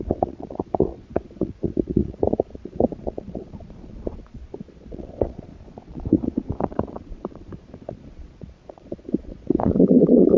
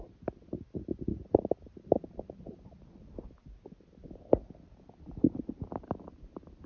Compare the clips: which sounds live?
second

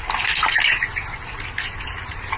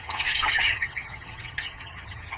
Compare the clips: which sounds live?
first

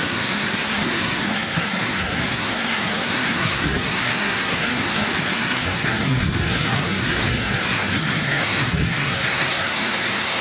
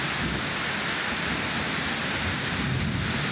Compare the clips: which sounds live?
second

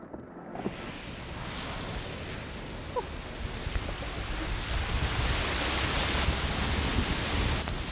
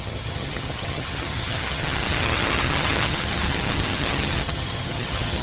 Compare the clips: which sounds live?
first